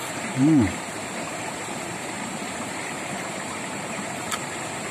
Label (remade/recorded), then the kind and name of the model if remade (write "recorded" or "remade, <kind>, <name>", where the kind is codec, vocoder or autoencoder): remade, vocoder, BigVGAN v2